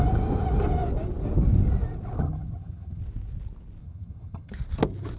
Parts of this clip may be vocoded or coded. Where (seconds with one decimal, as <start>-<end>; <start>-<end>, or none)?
2.2-3.0; 3.8-4.5

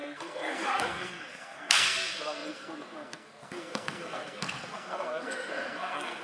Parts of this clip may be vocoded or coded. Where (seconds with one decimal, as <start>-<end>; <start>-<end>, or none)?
0.0-6.2

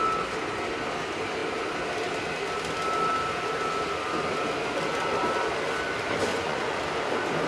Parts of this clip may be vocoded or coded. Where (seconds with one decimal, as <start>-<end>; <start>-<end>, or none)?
6.3-6.8